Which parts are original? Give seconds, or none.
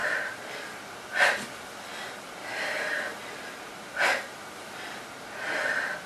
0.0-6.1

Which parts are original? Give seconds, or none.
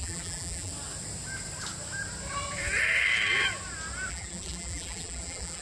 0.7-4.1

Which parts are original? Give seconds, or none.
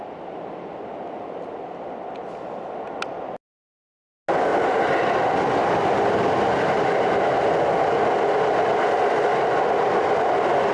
0.0-4.5; 5.2-10.7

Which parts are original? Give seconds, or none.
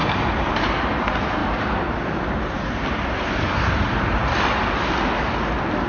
0.5-1.4; 3.5-5.9